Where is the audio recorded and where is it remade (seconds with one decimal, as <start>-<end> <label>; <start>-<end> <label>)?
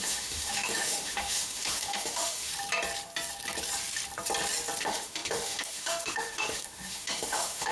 0.0-2.5 remade; 2.5-4.8 recorded; 4.8-7.7 remade